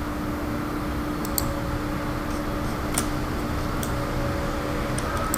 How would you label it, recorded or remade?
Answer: recorded